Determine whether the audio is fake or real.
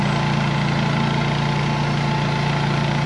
real